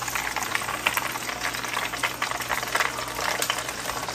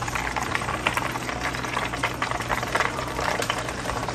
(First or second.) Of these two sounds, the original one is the first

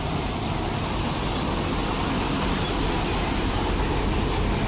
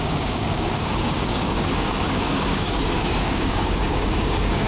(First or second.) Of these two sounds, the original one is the first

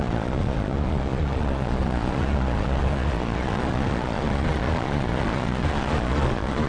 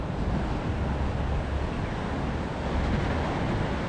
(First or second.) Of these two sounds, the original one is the second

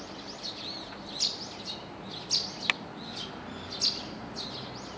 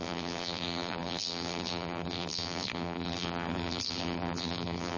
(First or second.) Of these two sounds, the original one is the first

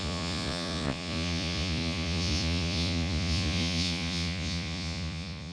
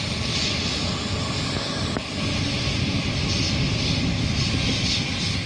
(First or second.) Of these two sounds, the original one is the second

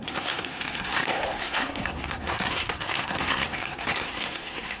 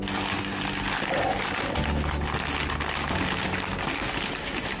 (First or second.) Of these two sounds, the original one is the second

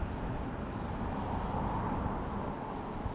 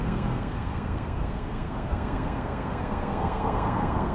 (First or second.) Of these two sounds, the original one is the first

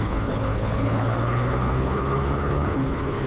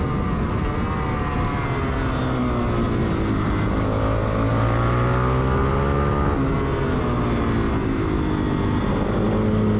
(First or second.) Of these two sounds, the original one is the second